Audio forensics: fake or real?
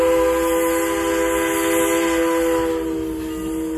real